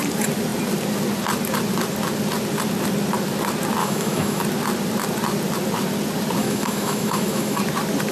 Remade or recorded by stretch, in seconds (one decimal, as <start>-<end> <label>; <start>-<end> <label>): 0.0-3.8 recorded; 3.8-4.4 remade; 4.4-6.4 recorded; 6.4-7.6 remade; 7.6-8.1 recorded